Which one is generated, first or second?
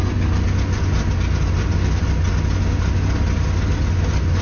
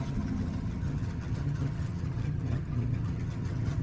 second